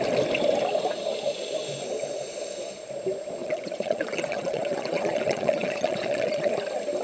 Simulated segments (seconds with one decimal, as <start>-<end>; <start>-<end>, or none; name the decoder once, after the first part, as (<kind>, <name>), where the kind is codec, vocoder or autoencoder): 3.4-6.5 (vocoder, Vocos)

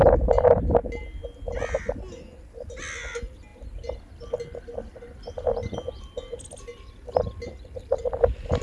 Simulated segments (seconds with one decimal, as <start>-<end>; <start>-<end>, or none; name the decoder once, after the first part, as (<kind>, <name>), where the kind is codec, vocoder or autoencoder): none

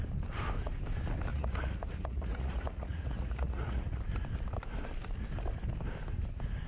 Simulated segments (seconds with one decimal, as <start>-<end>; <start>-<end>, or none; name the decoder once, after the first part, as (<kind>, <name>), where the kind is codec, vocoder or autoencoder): 1.3-4.0 (vocoder, Vocos)

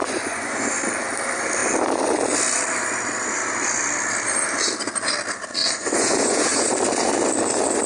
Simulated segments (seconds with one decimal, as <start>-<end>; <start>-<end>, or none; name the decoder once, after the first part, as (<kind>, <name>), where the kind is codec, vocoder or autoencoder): 0.0-0.7 (vocoder, Vocos); 5.6-6.7

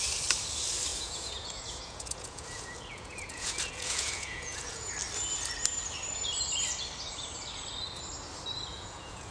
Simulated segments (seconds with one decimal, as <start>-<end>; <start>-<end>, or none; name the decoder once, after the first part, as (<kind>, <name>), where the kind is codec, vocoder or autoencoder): 0.9-4.9 (vocoder, Vocos); 8.7-9.3

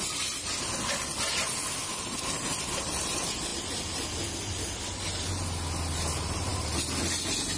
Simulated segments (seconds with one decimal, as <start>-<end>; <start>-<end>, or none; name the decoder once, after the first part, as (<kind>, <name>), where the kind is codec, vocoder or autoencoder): none